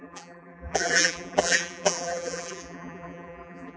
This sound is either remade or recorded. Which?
remade